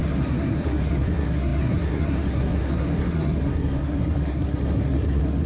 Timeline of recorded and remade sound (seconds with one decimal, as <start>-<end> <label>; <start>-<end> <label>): 0.0-5.5 remade